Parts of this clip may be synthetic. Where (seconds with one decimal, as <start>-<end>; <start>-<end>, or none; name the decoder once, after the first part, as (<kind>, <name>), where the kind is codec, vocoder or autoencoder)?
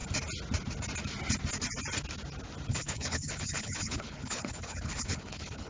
2.7-5.7 (codec, HILCodec)